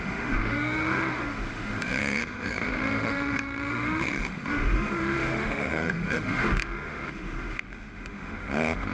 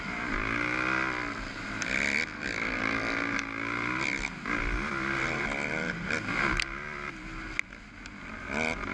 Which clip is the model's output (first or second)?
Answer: first